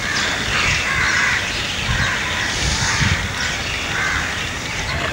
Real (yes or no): yes